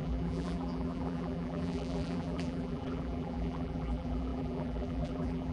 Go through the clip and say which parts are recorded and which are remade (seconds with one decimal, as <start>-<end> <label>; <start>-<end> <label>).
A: 0.0-5.5 remade